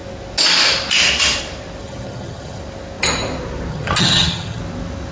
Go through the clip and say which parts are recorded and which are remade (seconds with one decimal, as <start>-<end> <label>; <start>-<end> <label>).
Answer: 0.0-1.8 recorded; 1.8-2.6 remade; 2.6-3.7 recorded; 3.7-4.6 remade; 4.6-5.1 recorded